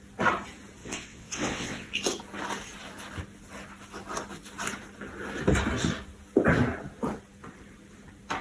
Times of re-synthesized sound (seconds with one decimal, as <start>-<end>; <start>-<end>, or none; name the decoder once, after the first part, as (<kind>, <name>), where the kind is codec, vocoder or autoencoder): 0.8-1.9 (vocoder, WaveNeXt)